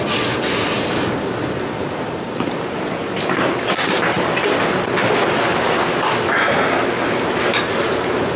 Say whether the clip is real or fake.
real